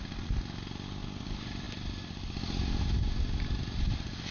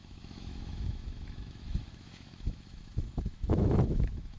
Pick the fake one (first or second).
second